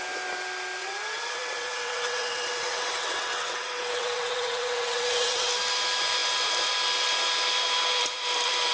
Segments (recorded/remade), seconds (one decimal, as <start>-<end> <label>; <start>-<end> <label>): 0.0-0.8 recorded; 0.8-5.5 remade; 5.5-8.7 recorded